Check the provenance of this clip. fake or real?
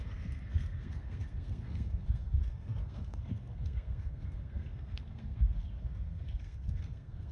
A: fake